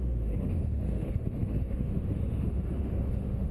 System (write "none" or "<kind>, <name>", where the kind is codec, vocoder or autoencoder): autoencoder, DAC-VAE